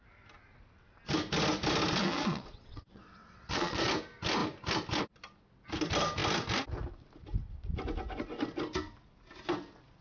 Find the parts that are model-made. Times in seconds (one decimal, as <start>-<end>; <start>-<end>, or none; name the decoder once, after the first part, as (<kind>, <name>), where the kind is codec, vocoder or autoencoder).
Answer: 2.0-3.8 (vocoder, WaveNeXt)